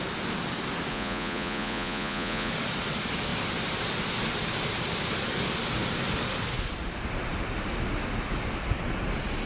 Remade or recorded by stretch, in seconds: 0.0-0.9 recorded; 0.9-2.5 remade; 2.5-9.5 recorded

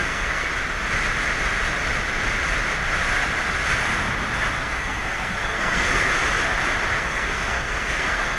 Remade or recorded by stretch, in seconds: 0.0-0.5 remade; 0.5-4.6 recorded; 4.6-6.1 remade; 6.1-6.9 recorded; 6.9-8.4 remade

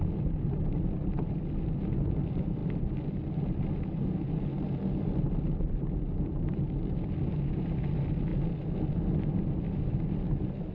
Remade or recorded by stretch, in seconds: 0.0-10.7 recorded

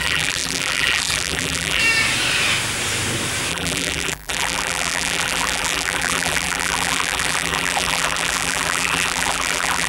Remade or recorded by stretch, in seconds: 0.0-1.8 remade; 1.8-3.5 recorded; 3.5-9.9 remade